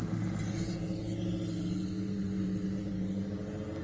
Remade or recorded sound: recorded